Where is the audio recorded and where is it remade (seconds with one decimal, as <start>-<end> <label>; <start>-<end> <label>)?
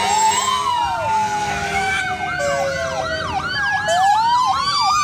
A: 0.0-1.4 recorded; 1.4-2.0 remade; 2.0-5.0 recorded